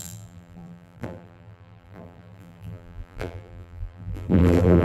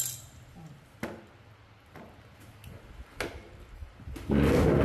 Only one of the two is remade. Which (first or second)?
first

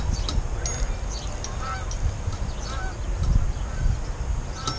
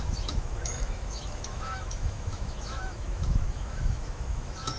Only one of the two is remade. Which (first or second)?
second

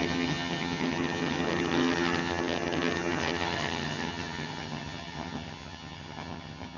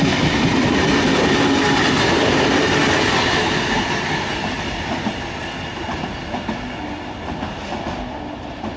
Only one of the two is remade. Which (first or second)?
first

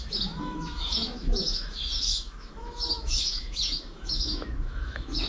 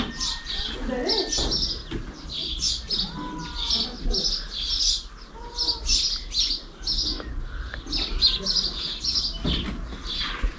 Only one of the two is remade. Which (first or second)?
first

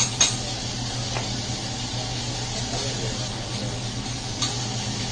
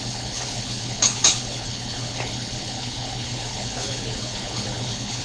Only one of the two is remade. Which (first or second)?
second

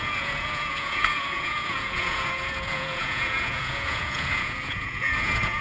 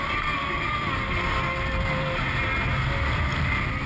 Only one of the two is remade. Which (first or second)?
first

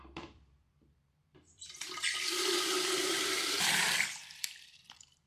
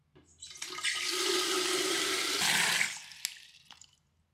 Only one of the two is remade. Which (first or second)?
first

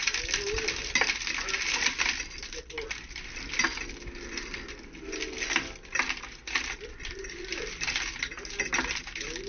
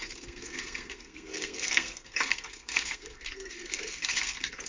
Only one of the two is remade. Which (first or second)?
second